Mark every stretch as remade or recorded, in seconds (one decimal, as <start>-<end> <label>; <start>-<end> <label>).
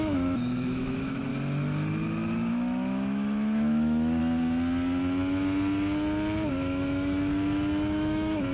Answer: 0.0-1.3 remade; 1.3-2.5 recorded; 2.5-4.2 remade; 4.2-6.5 recorded; 6.5-8.5 remade